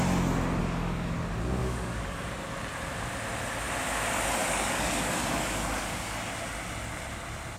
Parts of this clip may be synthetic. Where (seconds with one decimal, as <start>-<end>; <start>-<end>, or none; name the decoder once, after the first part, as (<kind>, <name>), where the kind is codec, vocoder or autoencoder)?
0.6-1.1 (codec, DAC); 1.6-2.3; 4.4-6.3